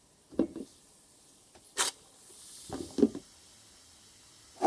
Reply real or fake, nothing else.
real